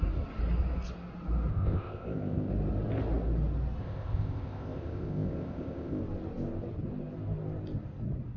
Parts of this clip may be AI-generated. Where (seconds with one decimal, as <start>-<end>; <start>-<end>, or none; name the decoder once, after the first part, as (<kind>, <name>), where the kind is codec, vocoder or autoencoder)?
1.5-2.5 (codec, ZipCodec); 3.8-6.0